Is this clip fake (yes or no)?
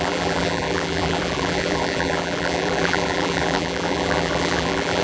yes